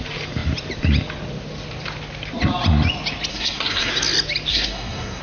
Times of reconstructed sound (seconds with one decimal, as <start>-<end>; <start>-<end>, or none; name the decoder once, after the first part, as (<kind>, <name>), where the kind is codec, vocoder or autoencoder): 3.3-3.9 (codec, SNAC); 4.5-5.2